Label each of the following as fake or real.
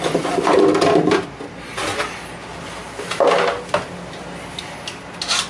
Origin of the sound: real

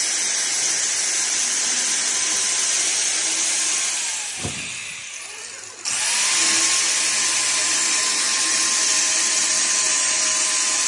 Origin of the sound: real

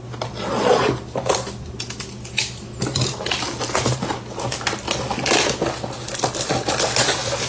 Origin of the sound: real